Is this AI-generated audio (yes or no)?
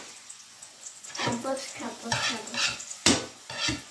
yes